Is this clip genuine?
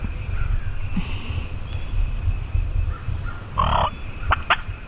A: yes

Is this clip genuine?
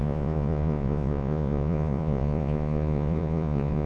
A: no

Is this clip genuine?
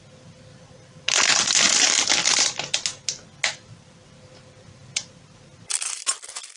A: yes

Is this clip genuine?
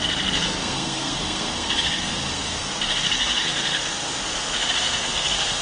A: no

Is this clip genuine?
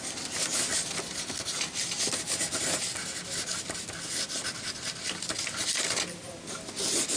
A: yes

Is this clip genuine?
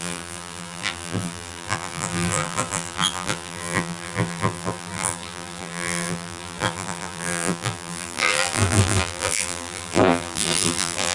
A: no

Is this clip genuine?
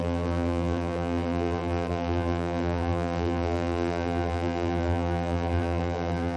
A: no